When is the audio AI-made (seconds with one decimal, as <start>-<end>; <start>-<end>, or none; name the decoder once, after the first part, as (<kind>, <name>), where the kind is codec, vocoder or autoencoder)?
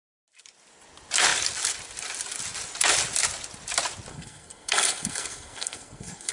4.1-6.3 (codec, SNAC)